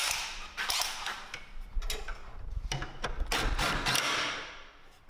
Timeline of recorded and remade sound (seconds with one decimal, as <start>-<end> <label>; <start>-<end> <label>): 0.0-5.1 recorded